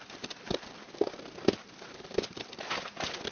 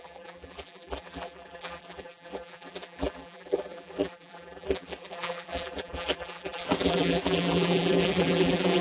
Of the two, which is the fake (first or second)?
second